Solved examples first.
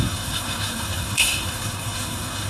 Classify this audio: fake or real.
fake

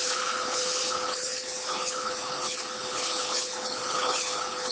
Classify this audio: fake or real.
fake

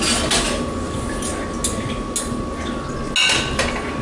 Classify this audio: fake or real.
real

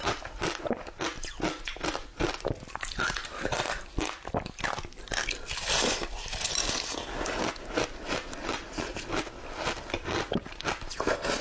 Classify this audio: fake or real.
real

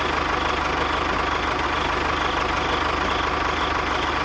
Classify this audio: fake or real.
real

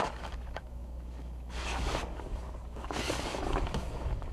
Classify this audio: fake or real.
fake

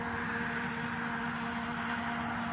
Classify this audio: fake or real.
real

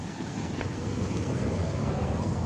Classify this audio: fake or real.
fake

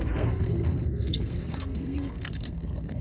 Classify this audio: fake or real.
fake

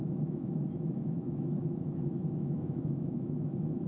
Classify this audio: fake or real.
fake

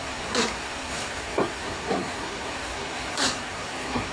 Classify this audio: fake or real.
fake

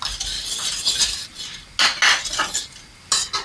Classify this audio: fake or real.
real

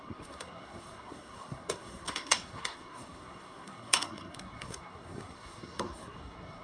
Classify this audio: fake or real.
fake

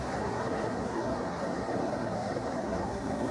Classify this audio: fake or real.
fake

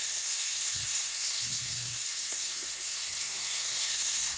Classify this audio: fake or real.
fake